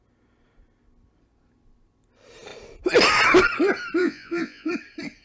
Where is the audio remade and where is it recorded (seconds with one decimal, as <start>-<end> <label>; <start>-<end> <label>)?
0.0-4.0 recorded; 4.0-4.7 remade; 4.7-5.2 recorded